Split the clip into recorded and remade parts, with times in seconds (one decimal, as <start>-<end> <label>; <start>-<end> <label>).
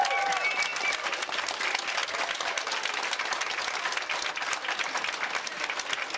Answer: 0.0-6.2 recorded